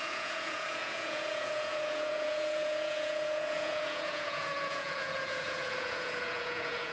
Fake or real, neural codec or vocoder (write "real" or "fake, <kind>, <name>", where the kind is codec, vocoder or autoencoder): fake, vocoder, Vocos